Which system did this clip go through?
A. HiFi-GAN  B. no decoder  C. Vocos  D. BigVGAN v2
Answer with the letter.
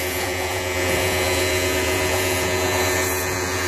C